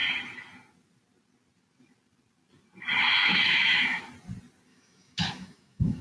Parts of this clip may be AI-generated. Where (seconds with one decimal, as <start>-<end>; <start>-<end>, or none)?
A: 3.2-4.0; 4.7-6.0